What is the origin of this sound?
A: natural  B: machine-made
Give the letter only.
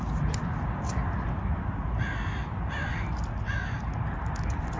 A